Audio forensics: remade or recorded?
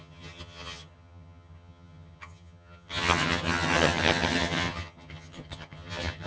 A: remade